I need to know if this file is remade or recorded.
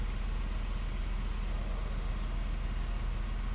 recorded